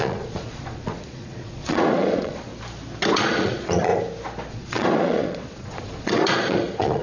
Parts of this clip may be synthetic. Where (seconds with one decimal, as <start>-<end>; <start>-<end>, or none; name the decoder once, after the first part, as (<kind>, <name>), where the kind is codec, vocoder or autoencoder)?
0.0-2.5 (vocoder, Vocos); 3.1-3.9; 4.5-7.0